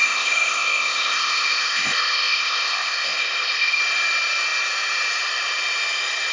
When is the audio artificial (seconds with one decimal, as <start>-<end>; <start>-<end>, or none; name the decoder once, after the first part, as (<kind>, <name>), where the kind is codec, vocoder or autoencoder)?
0.0-3.8 (codec, ZipCodec)